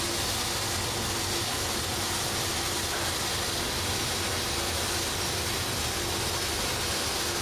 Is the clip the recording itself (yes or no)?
yes